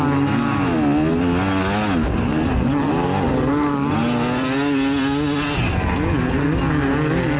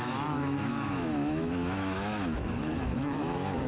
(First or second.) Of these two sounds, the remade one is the second